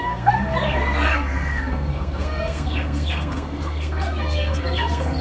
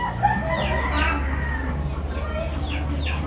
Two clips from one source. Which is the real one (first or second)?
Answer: second